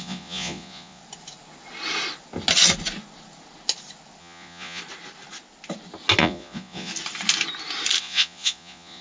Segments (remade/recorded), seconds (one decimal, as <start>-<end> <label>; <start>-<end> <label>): 0.0-1.0 remade; 1.0-4.2 recorded; 4.2-4.8 remade; 4.8-6.2 recorded; 6.2-6.9 remade; 6.9-8.0 recorded; 8.0-9.0 remade